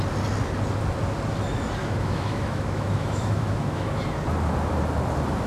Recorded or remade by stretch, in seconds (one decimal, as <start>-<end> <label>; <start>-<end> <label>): 0.0-1.8 recorded; 1.8-4.0 remade; 4.0-5.5 recorded